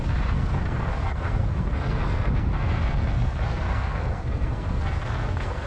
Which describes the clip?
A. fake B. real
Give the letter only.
A